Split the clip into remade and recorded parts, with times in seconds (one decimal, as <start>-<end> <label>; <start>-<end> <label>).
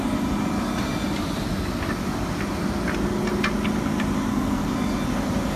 0.0-4.3 recorded; 4.3-4.9 remade; 4.9-5.6 recorded